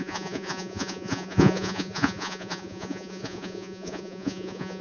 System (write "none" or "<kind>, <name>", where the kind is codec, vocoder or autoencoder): vocoder, Vocos